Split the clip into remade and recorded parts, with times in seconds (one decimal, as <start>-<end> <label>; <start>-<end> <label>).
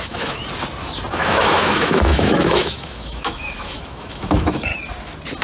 0.0-0.4 remade; 0.4-1.1 recorded; 1.1-4.7 remade; 4.7-5.4 recorded